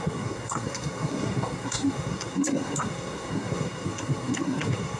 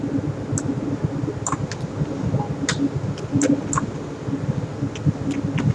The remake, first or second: first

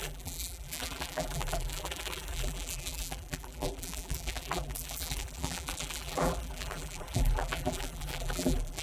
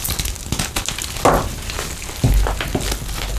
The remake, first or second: first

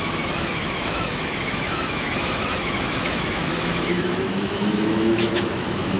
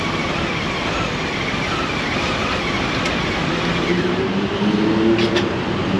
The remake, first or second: first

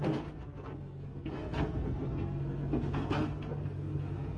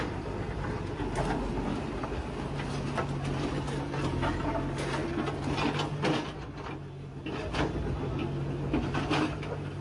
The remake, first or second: first